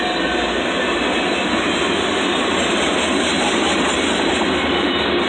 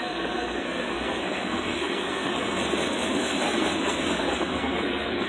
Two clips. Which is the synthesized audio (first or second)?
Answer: second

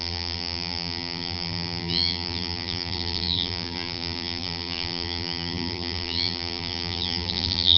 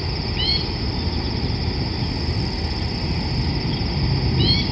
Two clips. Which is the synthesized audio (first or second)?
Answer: first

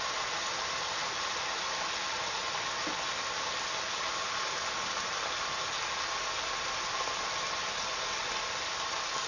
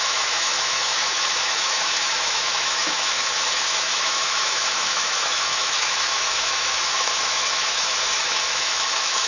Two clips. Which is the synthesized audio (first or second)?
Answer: second